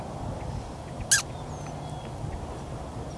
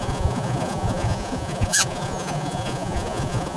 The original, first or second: first